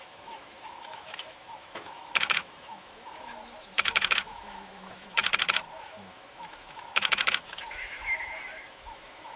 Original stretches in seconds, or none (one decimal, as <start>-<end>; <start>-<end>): 5.2-5.7